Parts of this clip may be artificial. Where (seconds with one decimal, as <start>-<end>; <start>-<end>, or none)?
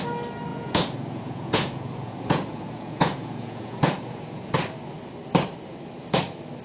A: 0.5-4.5